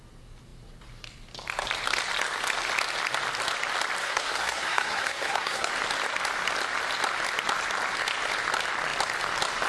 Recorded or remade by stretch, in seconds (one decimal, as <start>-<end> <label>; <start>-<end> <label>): 0.0-4.0 recorded; 4.0-5.7 remade; 5.7-9.7 recorded